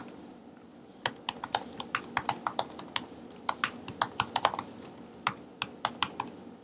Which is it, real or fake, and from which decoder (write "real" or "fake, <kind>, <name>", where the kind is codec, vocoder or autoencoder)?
real